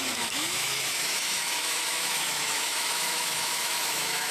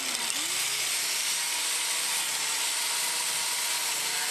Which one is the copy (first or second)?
first